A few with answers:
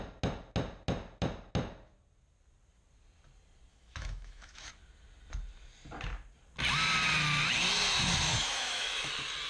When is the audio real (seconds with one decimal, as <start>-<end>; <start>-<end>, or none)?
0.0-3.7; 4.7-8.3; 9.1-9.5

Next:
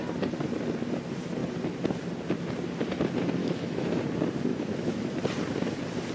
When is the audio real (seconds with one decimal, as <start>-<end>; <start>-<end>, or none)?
0.0-3.4; 4.0-4.5; 5.2-6.1

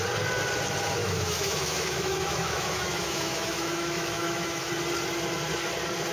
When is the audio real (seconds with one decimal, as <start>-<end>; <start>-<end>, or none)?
0.0-1.0; 4.7-6.1

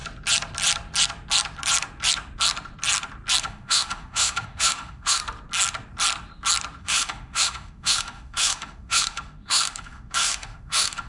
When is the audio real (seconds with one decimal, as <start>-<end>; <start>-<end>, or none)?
0.0-3.4; 5.2-6.8

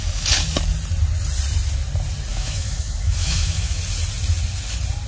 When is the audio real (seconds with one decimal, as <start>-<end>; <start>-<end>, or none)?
0.0-2.3; 3.8-5.1

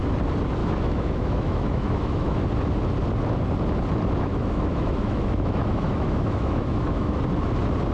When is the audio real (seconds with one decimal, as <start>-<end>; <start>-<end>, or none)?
0.0-0.6; 2.4-4.3; 7.2-7.9

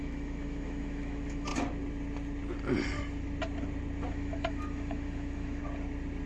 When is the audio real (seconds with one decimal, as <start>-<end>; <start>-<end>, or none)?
1.5-4.1; 5.6-6.3